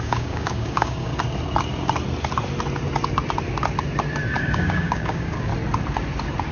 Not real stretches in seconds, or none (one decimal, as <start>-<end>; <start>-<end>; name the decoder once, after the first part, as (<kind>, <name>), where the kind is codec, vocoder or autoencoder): 0.0-1.1 (codec, DAC); 4.4-5.5